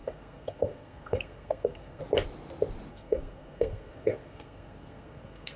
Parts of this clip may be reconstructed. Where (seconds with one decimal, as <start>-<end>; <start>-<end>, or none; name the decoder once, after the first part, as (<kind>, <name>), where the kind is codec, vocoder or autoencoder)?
0.0-2.0 (codec, SNAC); 2.9-5.6